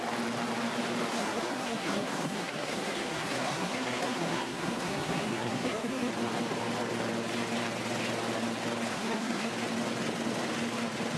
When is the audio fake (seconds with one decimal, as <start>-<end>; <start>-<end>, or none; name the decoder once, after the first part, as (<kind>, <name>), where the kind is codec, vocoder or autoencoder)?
1.1-6.1 (codec, SNAC); 8.9-9.5